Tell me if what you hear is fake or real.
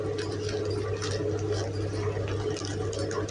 real